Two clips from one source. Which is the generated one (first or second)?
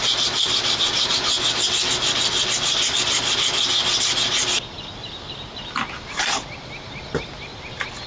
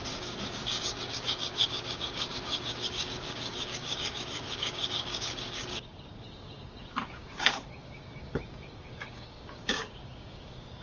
second